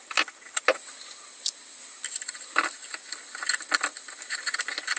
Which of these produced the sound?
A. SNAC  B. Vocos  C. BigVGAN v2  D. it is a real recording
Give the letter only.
D